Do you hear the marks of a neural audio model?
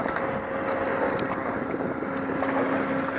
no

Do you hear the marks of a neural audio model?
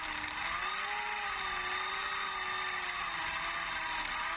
no